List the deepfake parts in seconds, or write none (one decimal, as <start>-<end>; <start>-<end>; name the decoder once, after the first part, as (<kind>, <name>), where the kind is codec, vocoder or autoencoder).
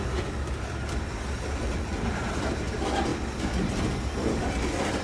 1.9-2.5 (vocoder, BigVGAN v2)